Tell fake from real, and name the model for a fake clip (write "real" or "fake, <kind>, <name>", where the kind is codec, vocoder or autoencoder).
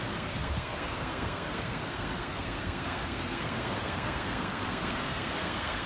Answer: fake, codec, SNAC